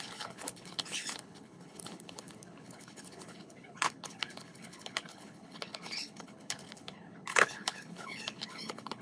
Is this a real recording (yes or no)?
no